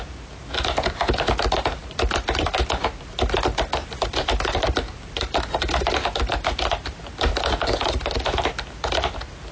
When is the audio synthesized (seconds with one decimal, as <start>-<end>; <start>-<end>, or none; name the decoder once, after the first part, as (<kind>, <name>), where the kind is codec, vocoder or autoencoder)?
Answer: 1.8-3.1 (vocoder, BigVGAN v2); 3.7-5.6; 7.3-8.1